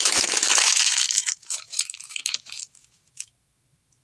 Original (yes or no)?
no